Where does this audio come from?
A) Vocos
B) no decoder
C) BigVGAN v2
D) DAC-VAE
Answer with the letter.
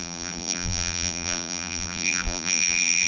C